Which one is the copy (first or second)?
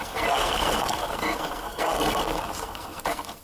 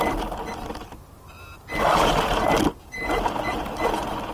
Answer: first